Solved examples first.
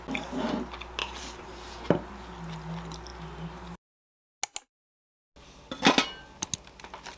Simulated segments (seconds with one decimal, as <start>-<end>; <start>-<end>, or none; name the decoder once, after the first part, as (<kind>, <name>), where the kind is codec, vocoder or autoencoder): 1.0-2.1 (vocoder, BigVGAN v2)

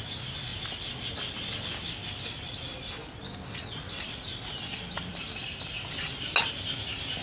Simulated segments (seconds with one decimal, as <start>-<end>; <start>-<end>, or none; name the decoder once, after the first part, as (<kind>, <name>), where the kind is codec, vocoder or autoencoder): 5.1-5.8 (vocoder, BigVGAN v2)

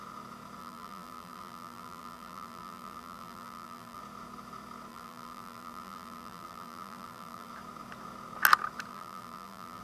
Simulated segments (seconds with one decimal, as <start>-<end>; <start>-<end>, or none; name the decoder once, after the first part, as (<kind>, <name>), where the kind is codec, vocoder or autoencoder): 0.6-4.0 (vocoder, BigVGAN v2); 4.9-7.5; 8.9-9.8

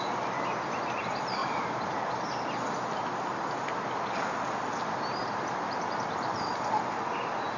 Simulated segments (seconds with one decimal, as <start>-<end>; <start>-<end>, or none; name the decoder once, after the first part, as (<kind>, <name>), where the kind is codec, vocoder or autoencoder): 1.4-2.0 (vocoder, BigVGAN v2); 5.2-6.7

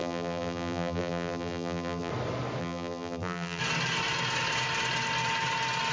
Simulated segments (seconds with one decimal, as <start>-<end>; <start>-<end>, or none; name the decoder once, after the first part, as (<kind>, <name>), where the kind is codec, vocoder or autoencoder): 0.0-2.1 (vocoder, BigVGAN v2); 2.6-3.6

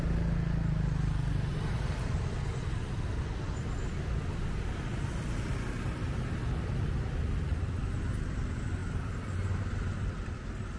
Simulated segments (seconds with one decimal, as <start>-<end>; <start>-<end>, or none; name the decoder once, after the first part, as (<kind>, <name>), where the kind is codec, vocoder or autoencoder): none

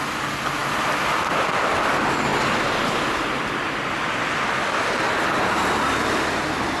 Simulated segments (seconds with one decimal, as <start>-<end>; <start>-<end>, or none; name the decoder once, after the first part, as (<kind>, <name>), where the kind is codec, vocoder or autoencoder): none